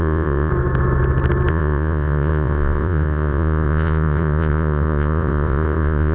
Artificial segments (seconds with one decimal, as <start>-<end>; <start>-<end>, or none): 0.0-0.5; 1.5-6.1